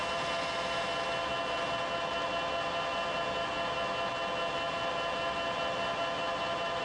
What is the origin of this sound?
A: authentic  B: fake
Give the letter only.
A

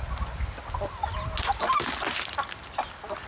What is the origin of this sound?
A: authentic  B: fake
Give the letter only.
A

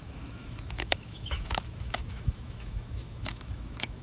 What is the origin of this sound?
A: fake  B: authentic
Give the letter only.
A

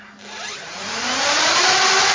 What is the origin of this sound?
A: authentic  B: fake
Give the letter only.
A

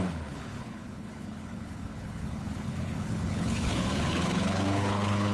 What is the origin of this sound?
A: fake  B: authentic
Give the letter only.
A